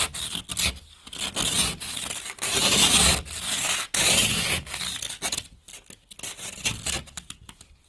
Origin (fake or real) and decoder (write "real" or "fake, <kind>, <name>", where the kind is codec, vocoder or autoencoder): real